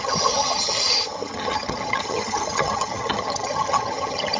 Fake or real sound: fake